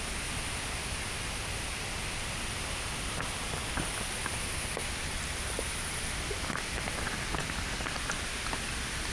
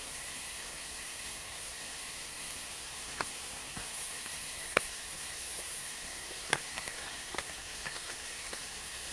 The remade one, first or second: second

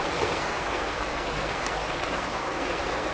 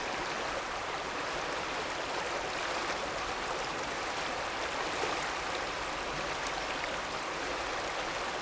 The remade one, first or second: first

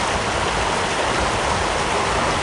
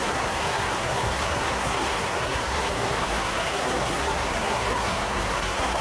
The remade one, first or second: second